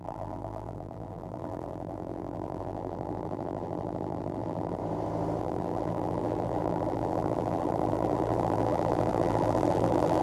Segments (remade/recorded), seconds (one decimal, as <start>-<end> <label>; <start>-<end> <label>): 0.0-4.8 remade; 4.8-5.4 recorded; 5.4-10.2 remade